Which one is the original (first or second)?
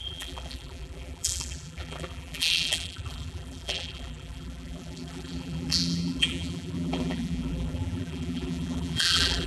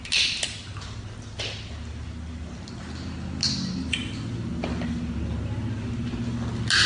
second